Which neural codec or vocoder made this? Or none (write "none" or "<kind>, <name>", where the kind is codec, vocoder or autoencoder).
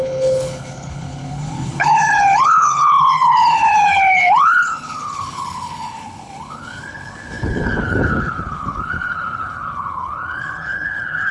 codec, HILCodec